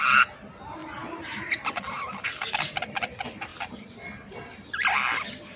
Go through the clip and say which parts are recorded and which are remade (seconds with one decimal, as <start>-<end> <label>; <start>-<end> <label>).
0.0-5.6 recorded